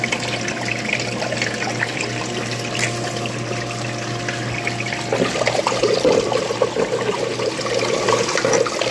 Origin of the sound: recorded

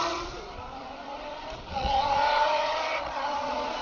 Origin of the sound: remade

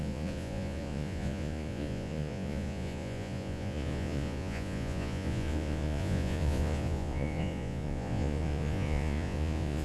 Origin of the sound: remade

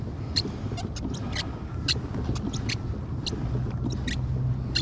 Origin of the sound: recorded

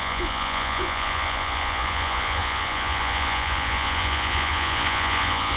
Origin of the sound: remade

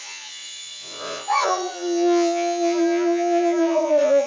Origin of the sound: remade